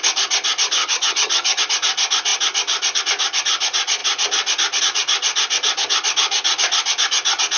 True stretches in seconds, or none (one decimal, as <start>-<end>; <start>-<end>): 0.0-0.8; 1.6-7.6